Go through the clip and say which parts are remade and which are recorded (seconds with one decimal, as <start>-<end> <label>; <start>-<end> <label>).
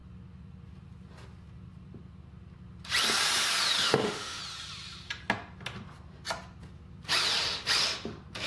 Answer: 0.0-3.8 recorded; 3.8-4.4 remade; 4.4-8.5 recorded